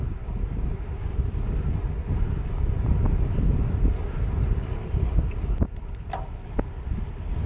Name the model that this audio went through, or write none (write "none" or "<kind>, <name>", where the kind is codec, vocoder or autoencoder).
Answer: none